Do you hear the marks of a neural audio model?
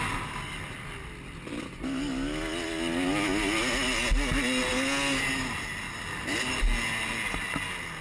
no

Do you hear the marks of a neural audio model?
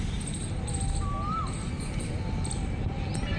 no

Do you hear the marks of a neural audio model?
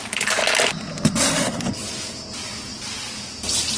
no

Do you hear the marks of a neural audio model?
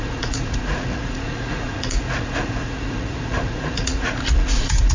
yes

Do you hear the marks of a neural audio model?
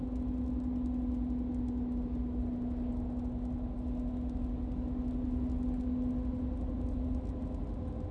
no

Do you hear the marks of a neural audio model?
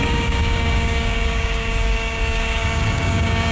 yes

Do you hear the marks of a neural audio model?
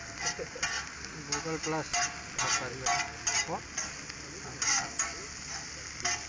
no